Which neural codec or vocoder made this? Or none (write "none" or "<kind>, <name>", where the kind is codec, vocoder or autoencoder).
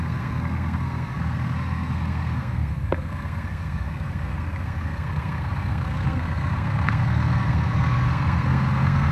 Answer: codec, SNAC